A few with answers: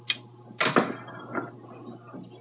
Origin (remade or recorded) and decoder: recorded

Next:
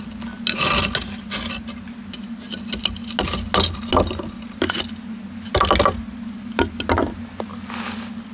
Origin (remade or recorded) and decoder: recorded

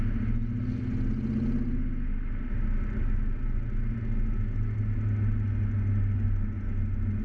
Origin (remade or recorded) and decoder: recorded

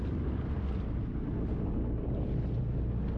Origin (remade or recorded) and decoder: recorded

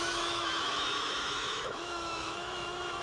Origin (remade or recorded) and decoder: remade, autoencoder, DAC-VAE